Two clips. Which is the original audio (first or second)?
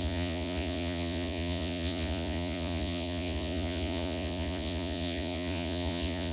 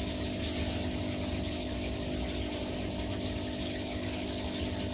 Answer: second